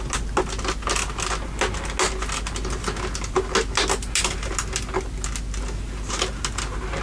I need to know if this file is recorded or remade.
recorded